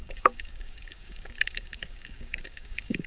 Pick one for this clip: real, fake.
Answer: fake